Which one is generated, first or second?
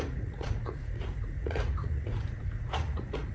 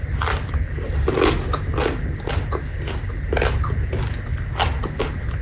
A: first